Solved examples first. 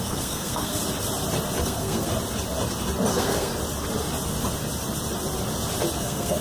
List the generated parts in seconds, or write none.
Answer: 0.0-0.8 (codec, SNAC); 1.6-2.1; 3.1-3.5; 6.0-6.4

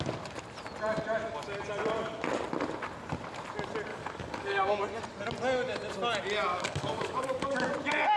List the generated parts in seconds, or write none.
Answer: 3.9-4.8 (codec, DAC); 6.5-7.7

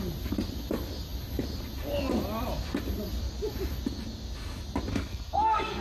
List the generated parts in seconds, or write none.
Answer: 4.9-5.8 (codec, SNAC)

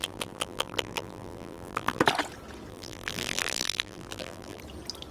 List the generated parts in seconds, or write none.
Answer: 0.0-2.0 (vocoder, BigVGAN v2); 2.7-4.6

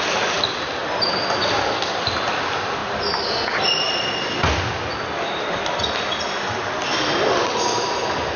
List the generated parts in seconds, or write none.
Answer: none

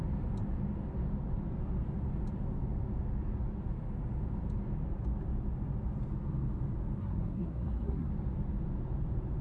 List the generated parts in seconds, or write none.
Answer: 7.0-8.1 (codec, SNAC)